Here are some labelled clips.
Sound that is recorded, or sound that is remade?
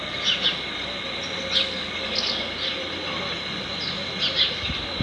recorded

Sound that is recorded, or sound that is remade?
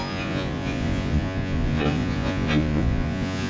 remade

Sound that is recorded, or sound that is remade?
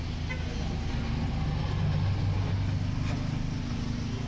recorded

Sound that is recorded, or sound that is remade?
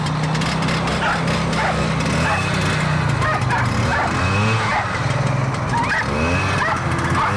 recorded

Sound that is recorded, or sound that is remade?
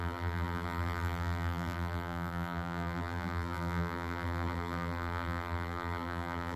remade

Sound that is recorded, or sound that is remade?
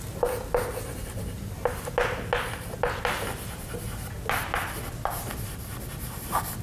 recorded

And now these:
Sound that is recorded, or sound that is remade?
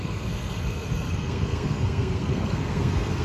remade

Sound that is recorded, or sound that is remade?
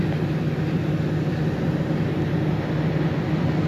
recorded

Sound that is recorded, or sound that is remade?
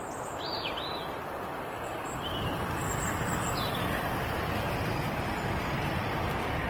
recorded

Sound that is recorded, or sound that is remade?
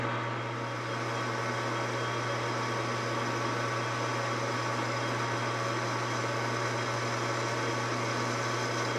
recorded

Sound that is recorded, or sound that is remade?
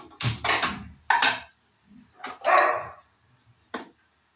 recorded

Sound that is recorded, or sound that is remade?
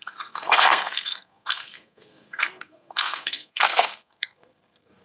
remade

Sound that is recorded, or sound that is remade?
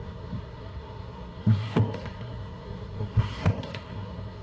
remade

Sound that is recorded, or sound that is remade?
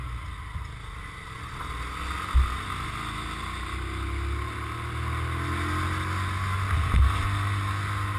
recorded